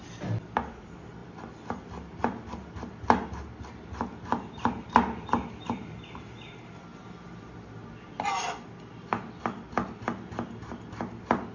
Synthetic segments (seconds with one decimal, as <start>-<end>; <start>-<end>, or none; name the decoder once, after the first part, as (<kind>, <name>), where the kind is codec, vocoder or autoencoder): none